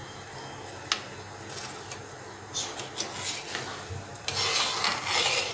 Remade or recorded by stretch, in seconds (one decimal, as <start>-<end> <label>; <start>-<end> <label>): 0.0-5.5 recorded